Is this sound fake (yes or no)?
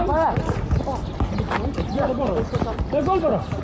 no